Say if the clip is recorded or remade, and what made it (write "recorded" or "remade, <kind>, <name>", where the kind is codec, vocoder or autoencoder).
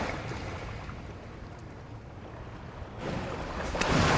recorded